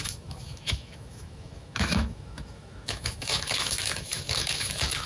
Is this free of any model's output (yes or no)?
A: no